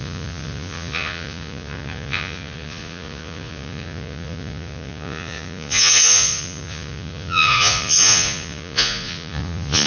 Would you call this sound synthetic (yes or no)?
yes